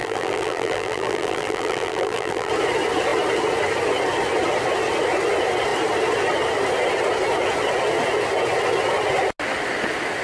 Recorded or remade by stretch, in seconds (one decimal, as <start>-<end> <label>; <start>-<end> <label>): 0.0-2.5 remade; 2.5-10.2 recorded